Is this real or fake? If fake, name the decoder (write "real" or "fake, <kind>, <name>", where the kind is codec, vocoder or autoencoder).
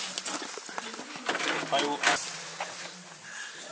real